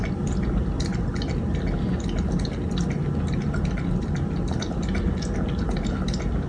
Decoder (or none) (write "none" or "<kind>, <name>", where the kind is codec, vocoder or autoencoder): none